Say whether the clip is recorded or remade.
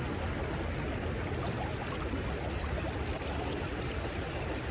recorded